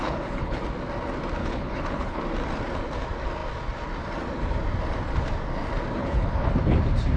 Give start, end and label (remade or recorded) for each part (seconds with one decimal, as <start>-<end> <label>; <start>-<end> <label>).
0.0-0.6 remade; 0.6-1.4 recorded; 1.4-2.2 remade; 2.2-6.0 recorded; 6.0-6.5 remade; 6.5-7.2 recorded